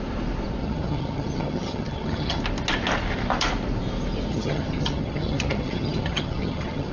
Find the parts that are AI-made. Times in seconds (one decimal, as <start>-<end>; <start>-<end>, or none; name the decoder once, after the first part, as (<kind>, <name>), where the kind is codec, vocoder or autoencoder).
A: 0.6-2.4 (vocoder, HiFi-GAN); 4.3-6.9